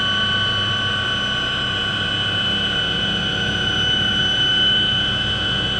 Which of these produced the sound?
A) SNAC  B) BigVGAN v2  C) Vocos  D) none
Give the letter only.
D